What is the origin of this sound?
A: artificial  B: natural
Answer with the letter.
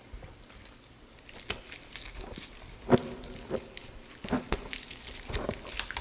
B